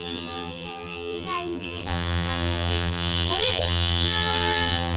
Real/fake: fake